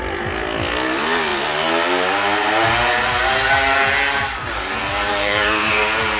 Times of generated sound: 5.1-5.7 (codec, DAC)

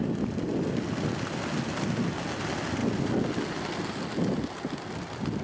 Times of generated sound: none

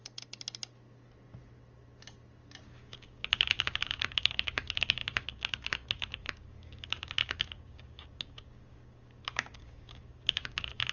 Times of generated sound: 2.6-10.9 (codec, DAC)

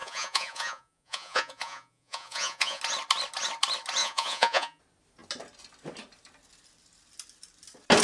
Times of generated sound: 0.0-2.8 (vocoder, Vocos); 4.0-4.8

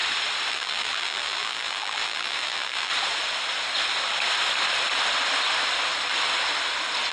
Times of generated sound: 0.5-2.9 (vocoder, BigVGAN v2)

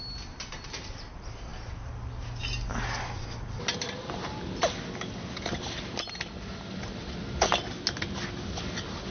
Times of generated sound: none

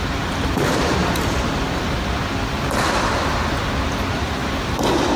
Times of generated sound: none